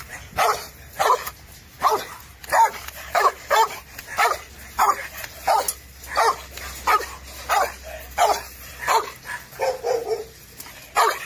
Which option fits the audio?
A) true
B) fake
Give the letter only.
A